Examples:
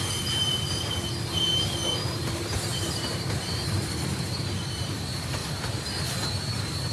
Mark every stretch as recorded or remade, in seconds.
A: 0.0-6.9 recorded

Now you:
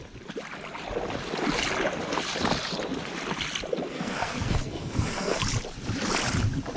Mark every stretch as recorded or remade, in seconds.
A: 0.0-3.8 recorded; 3.8-5.4 remade; 5.4-6.8 recorded

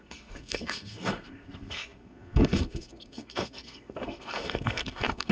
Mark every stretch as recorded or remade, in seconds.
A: 0.0-5.3 remade

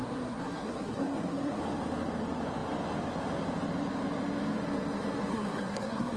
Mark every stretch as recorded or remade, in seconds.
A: 0.0-1.6 remade; 1.6-5.3 recorded; 5.3-6.2 remade

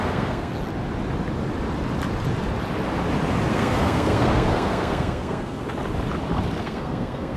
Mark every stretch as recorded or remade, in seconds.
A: 0.0-0.5 remade; 0.5-3.5 recorded; 3.5-5.6 remade; 5.6-6.6 recorded; 6.6-7.4 remade

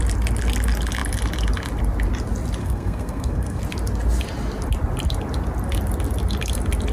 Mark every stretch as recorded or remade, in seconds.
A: 0.0-2.6 recorded; 2.6-3.6 remade; 3.6-6.9 recorded

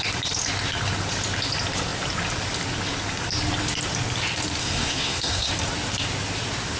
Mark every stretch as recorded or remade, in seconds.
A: 0.0-4.6 recorded; 4.6-5.5 remade; 5.5-6.8 recorded

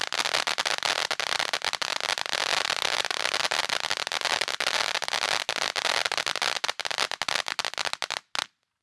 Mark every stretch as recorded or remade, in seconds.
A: 0.0-8.8 recorded